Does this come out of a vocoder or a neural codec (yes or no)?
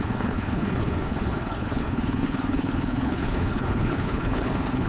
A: yes